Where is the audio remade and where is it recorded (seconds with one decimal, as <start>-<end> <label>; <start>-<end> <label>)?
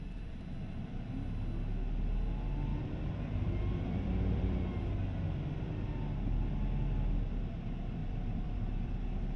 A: 0.0-2.7 recorded; 2.7-4.6 remade; 4.6-8.0 recorded; 8.0-9.0 remade; 9.0-9.4 recorded